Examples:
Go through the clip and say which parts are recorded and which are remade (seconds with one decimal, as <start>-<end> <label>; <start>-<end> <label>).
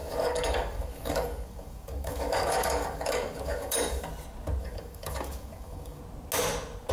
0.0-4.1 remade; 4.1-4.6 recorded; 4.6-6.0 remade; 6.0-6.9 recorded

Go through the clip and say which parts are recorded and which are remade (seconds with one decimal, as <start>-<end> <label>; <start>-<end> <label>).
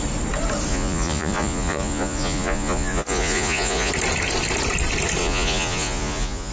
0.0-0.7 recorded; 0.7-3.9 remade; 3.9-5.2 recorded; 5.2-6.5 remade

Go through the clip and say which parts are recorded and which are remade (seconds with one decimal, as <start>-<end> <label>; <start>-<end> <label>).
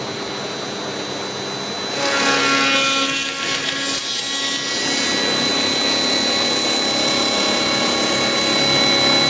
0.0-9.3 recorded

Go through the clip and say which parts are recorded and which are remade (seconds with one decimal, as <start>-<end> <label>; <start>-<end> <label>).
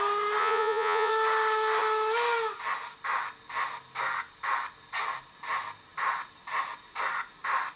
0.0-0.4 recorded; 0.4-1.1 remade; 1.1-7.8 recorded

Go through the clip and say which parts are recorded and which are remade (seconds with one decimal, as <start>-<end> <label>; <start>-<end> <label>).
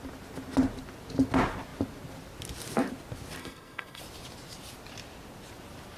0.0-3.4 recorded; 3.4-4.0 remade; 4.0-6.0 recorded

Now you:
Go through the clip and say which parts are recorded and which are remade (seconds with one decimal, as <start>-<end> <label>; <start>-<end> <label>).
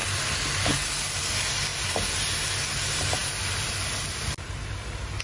0.0-5.2 recorded